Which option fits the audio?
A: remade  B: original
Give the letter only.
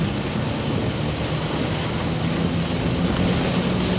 B